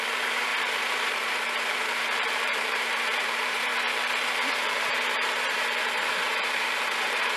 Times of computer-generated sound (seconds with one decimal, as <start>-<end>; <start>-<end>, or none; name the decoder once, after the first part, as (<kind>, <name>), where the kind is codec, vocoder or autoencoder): 0.0-3.7 (vocoder, BigVGAN v2); 4.8-7.4